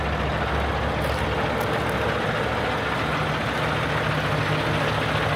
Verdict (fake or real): real